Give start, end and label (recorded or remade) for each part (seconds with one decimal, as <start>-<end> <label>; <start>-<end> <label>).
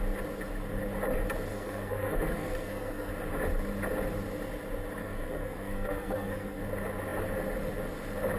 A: 0.0-1.5 recorded; 1.5-3.1 remade; 3.1-5.0 recorded; 5.0-6.6 remade; 6.6-8.4 recorded